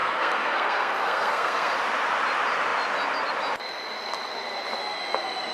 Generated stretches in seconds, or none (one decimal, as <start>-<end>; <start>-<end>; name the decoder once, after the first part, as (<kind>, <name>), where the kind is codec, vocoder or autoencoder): 0.0-1.7 (codec, SNAC)